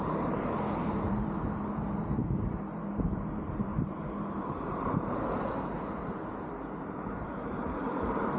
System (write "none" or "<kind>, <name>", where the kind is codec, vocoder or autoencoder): vocoder, BigVGAN v2